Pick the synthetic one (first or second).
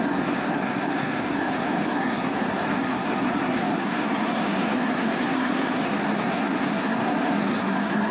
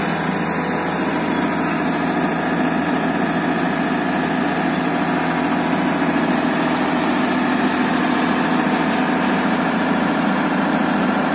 first